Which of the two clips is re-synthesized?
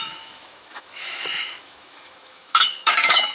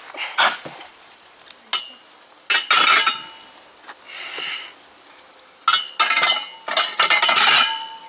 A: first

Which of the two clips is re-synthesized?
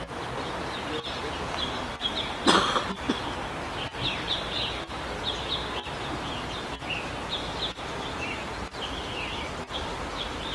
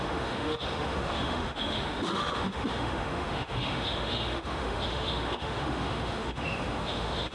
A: second